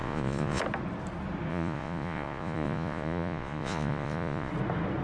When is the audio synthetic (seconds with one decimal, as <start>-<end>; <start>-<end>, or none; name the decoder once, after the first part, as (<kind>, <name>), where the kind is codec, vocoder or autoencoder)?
0.0-0.6 (vocoder, Vocos); 1.5-4.5